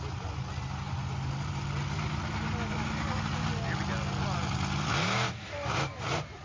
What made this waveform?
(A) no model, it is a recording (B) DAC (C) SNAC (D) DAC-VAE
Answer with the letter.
A